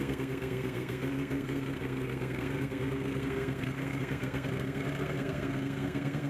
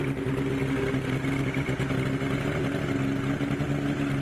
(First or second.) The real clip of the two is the second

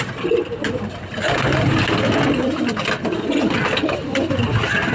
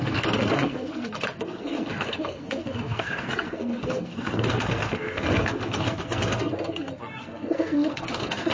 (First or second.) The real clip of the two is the first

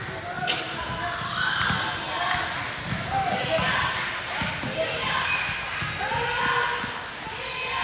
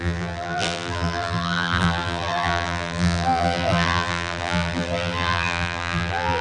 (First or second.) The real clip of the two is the first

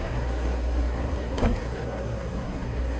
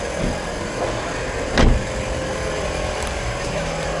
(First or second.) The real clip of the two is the second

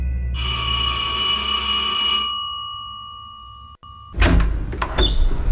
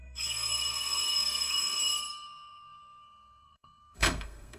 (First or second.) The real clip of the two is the first